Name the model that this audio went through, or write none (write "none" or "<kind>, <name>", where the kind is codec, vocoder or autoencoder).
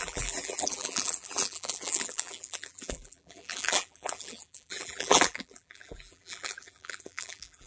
vocoder, BigVGAN v2